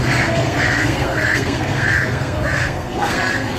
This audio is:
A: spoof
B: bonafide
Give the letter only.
A